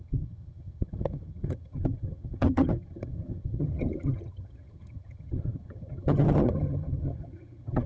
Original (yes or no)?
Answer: no